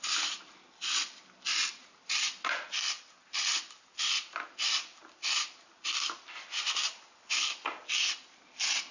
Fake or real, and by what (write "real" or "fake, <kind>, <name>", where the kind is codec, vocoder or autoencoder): real